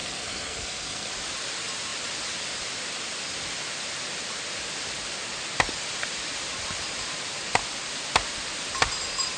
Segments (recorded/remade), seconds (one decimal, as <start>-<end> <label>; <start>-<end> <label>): 0.0-1.1 remade; 1.1-9.4 recorded